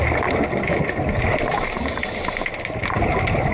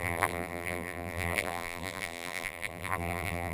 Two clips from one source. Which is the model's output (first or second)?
second